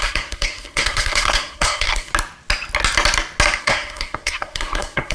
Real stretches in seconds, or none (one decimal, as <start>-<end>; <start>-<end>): 2.1-3.6